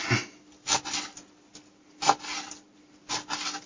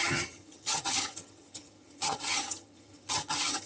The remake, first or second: second